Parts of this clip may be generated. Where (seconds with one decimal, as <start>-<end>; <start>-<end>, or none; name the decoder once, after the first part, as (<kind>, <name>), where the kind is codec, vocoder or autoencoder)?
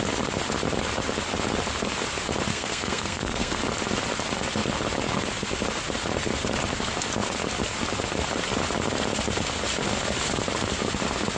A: 2.5-3.6 (codec, SNAC)